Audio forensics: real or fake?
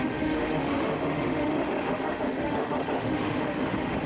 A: fake